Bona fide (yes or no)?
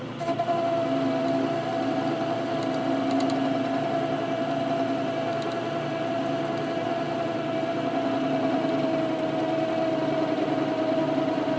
yes